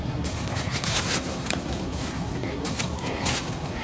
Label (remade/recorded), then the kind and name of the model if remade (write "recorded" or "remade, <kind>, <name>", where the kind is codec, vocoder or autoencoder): remade, codec, SNAC